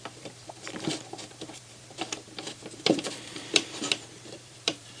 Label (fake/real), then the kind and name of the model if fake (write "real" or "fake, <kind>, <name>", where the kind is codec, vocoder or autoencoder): fake, vocoder, BigVGAN v2